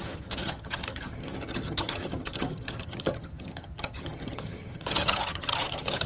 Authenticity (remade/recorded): remade